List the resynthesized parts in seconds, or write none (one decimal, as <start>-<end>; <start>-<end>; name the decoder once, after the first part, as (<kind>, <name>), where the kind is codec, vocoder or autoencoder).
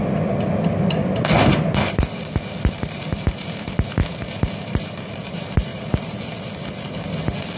5.7-6.2 (vocoder, BigVGAN v2)